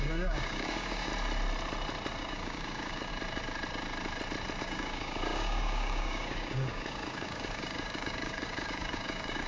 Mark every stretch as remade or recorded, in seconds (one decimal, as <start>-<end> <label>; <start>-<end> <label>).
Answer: 0.0-1.1 remade; 1.1-2.2 recorded; 2.2-3.1 remade; 3.1-4.6 recorded; 4.6-9.5 remade

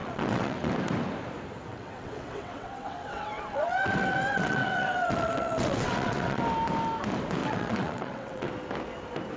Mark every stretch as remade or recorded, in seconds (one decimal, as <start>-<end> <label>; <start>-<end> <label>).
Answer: 0.0-0.7 remade; 0.7-1.7 recorded; 1.7-6.4 remade; 6.4-7.4 recorded; 7.4-8.5 remade; 8.5-9.4 recorded

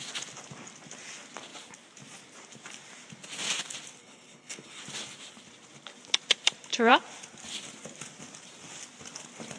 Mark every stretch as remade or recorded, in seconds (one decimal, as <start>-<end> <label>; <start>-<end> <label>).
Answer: 0.0-4.0 recorded; 4.0-4.8 remade; 4.8-9.6 recorded

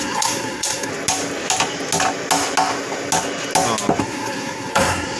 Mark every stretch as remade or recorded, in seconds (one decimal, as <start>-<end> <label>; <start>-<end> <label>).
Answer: 0.0-0.9 remade; 0.9-4.0 recorded; 4.0-5.2 remade

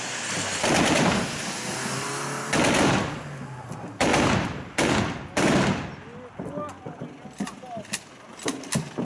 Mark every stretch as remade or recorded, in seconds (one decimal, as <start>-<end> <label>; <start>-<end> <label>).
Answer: 0.0-9.0 recorded